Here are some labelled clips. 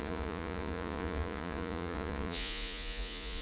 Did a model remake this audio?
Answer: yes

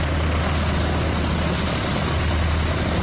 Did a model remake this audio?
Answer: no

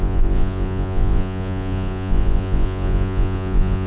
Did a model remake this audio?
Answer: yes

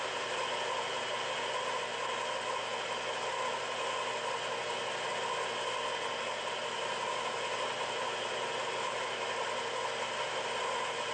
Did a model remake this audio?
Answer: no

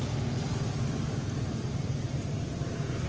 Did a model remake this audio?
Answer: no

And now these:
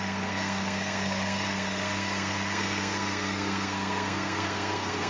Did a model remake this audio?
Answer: yes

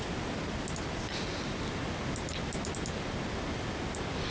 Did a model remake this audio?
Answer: no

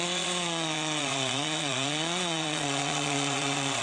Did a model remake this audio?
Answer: yes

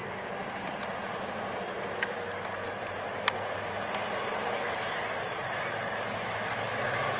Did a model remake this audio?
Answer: no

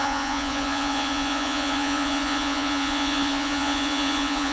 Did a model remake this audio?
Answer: yes